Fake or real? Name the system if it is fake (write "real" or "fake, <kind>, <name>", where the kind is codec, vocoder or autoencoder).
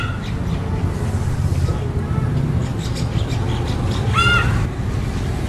real